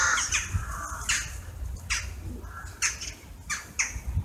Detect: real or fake real